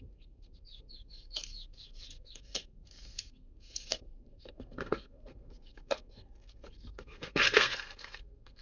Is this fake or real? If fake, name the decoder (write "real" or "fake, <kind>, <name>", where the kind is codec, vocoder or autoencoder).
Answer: fake, codec, SNAC